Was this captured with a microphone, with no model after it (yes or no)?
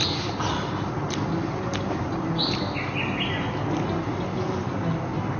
yes